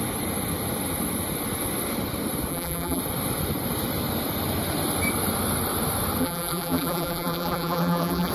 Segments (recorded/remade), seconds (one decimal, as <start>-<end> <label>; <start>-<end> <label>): 0.0-2.5 recorded; 2.5-3.0 remade; 3.0-6.2 recorded; 6.2-8.3 remade